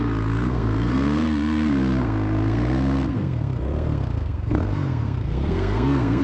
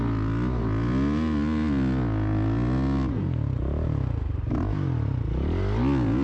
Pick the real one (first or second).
second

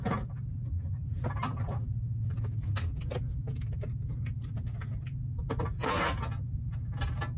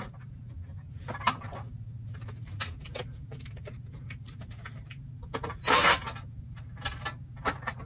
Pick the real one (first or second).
first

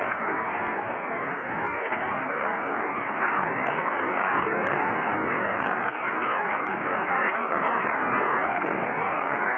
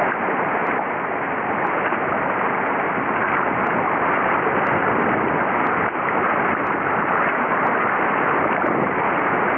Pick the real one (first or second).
second